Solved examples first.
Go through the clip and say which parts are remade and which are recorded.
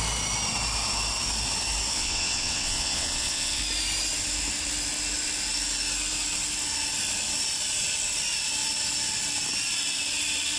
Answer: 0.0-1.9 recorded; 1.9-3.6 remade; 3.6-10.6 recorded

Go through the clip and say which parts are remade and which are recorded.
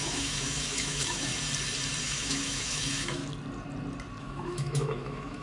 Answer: 0.0-1.3 remade; 1.3-2.0 recorded; 2.0-3.2 remade; 3.2-4.2 recorded; 4.2-5.4 remade